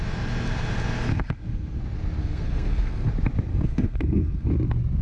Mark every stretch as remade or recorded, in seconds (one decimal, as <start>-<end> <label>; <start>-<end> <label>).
0.0-1.1 recorded; 1.1-1.8 remade; 1.8-2.2 recorded; 2.2-3.1 remade; 3.1-3.5 recorded; 3.5-4.5 remade; 4.5-5.0 recorded